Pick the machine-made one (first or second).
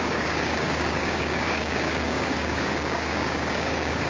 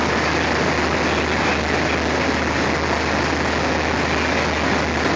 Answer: first